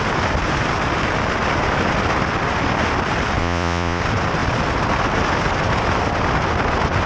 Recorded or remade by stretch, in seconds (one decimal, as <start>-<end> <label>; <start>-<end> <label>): 0.0-3.4 recorded; 3.4-4.0 remade; 4.0-7.1 recorded